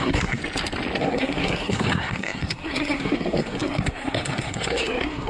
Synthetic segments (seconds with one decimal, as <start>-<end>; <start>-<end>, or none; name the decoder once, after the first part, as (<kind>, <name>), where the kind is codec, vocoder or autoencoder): 0.0-0.4 (codec, SNAC); 1.0-5.3